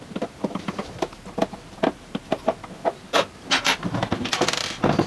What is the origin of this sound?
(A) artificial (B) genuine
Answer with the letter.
B